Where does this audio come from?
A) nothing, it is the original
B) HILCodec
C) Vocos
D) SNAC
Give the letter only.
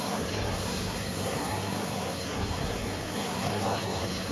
D